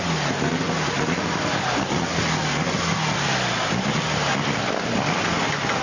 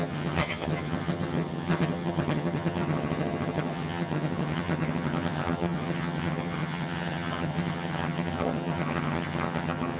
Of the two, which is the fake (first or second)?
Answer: second